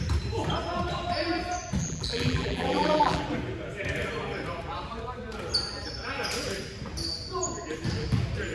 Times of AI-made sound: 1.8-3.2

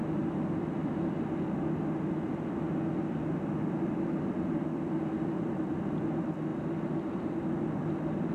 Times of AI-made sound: none